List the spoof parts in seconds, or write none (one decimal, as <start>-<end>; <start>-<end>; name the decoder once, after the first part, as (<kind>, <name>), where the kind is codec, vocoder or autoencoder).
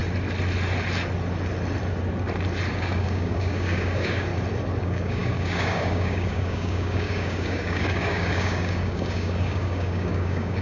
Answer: 2.7-4.3 (codec, DAC); 4.8-10.6